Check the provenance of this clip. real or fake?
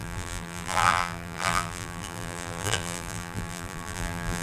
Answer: fake